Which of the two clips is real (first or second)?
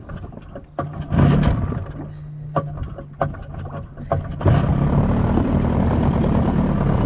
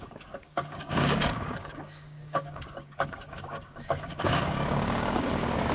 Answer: first